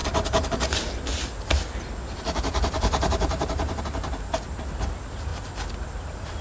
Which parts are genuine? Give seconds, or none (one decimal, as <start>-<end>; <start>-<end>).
0.0-6.4